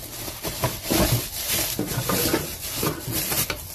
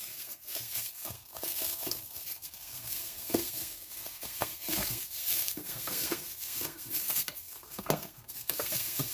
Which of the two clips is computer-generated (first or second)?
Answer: second